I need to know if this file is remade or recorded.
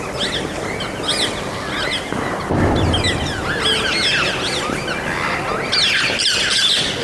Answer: recorded